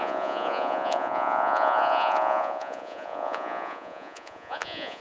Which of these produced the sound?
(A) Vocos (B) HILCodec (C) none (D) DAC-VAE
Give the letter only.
A